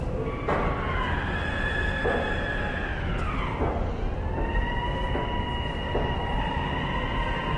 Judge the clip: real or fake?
real